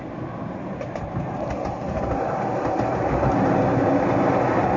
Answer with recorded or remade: recorded